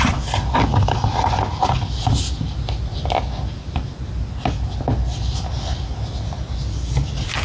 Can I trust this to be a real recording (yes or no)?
yes